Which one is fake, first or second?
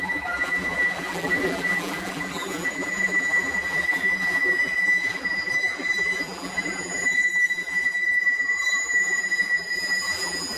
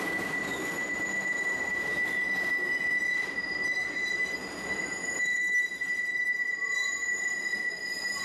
first